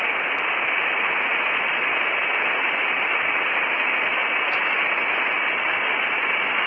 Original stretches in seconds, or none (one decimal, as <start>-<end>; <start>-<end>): 0.0-6.7